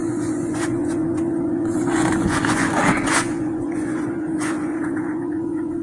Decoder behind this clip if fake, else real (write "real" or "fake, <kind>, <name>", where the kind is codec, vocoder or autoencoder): fake, vocoder, Vocos